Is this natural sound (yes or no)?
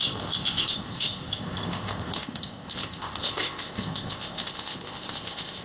no